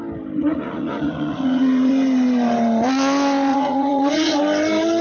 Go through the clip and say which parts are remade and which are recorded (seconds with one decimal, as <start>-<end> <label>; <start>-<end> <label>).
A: 0.0-0.4 recorded; 0.4-1.9 remade; 1.9-3.5 recorded; 3.5-4.4 remade; 4.4-5.0 recorded